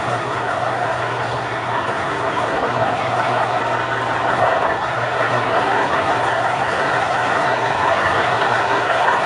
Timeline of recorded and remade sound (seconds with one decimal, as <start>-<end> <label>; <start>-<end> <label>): 0.0-3.6 remade; 3.6-4.3 recorded; 4.3-9.3 remade